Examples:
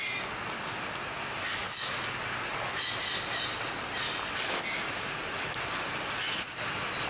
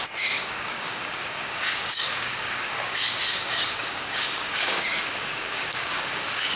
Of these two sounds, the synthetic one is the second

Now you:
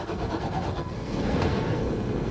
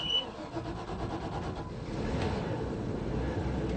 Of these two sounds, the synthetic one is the first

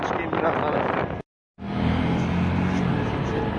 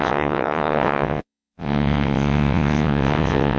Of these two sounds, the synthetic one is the second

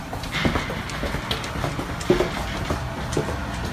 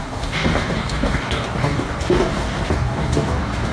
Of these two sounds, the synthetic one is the second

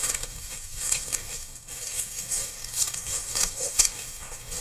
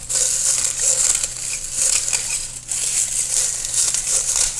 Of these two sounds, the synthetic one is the first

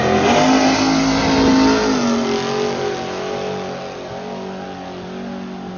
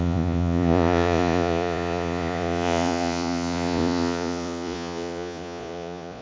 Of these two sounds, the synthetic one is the second